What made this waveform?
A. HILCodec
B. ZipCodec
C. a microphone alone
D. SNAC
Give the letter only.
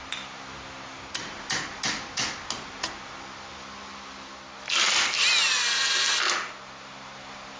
C